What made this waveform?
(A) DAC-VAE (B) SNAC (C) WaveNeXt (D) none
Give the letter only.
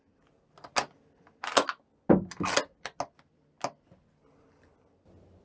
D